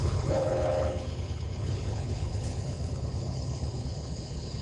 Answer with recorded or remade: remade